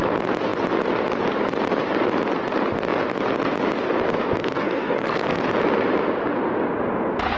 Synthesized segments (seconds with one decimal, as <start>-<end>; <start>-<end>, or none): 4.4-5.4